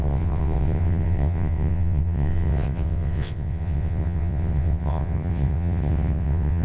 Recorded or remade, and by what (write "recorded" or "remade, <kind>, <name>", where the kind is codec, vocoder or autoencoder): remade, vocoder, WaveNeXt